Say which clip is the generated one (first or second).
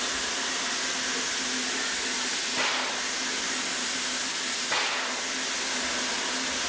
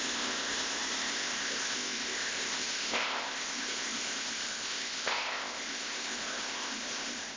second